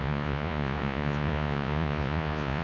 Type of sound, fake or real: fake